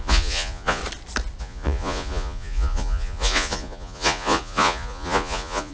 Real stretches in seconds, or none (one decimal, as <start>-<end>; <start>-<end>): 0.8-1.4

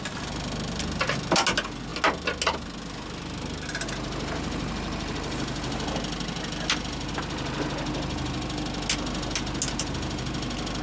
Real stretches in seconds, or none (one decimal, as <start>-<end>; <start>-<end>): 0.0-10.8

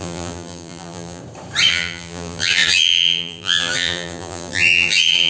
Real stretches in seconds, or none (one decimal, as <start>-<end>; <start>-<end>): 1.2-1.7